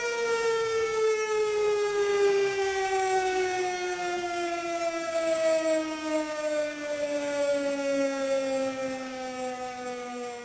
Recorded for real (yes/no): no